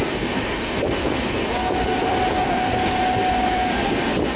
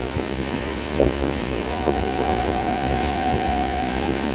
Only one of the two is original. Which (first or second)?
first